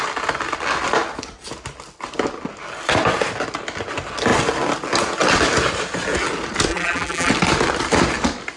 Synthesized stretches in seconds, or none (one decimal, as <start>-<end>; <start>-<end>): 6.7-7.3